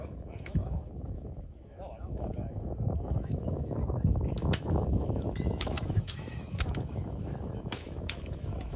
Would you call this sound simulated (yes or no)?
yes